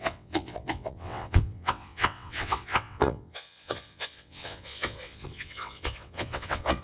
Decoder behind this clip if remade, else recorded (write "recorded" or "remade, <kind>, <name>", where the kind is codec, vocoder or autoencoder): remade, vocoder, WaveNeXt